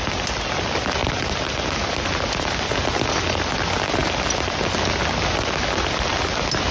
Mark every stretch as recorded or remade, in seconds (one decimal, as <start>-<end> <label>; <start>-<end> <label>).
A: 0.0-6.7 recorded